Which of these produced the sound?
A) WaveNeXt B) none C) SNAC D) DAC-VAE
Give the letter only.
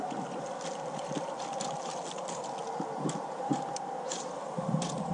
B